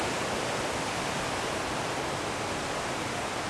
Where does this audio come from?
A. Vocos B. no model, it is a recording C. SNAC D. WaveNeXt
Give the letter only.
B